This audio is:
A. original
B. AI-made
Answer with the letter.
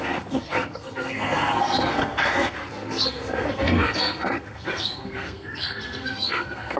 B